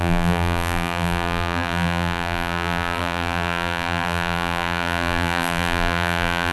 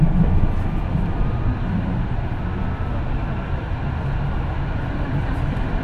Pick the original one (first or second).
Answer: second